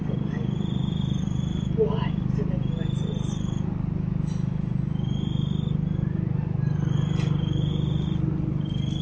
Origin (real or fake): real